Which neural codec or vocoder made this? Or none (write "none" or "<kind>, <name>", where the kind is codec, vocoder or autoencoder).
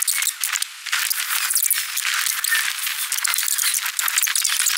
none